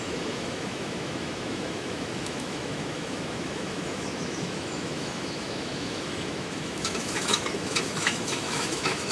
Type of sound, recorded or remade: remade